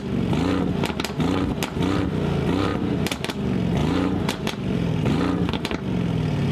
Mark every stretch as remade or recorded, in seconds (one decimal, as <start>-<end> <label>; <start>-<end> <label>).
0.0-3.8 recorded; 3.8-5.2 remade; 5.2-6.5 recorded